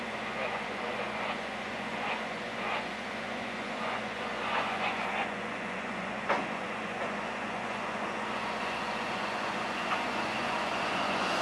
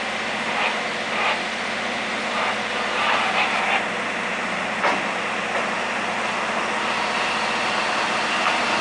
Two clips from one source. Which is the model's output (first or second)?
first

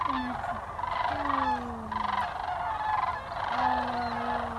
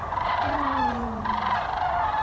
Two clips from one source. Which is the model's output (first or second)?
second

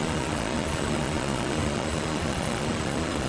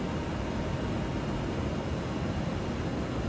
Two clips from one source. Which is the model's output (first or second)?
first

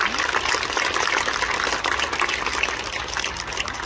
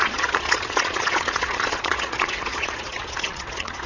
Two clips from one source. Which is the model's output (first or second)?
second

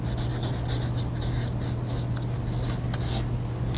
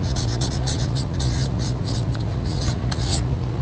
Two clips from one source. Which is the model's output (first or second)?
second